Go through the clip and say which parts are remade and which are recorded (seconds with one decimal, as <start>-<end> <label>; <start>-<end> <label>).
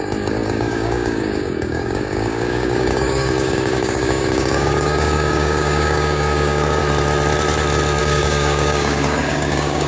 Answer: 0.0-6.8 remade; 6.8-8.0 recorded; 8.0-9.9 remade